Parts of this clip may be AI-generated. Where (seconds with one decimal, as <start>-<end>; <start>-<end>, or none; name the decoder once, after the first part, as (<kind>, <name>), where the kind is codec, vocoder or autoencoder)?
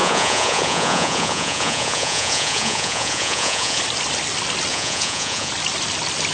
0.0-3.8 (vocoder, Vocos); 4.7-5.5